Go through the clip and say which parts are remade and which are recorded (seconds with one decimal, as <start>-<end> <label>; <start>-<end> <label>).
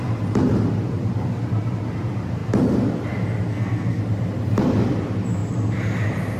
0.0-3.5 recorded; 3.5-4.0 remade; 4.0-6.4 recorded